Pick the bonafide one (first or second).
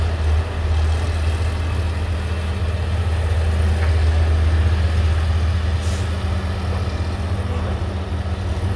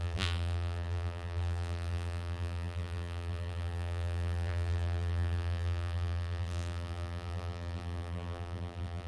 first